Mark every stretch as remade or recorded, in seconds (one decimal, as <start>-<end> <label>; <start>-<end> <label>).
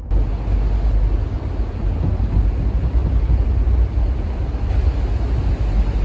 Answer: 0.0-6.0 recorded